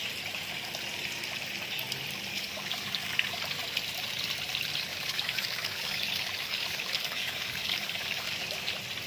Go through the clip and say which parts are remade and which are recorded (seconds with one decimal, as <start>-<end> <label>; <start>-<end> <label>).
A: 0.0-2.3 recorded; 2.3-3.4 remade; 3.4-4.9 recorded; 4.9-8.7 remade; 8.7-9.1 recorded